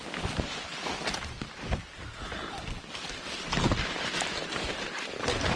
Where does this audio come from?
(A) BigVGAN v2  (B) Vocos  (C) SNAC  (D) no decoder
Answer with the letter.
D